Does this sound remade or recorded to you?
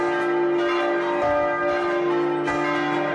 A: recorded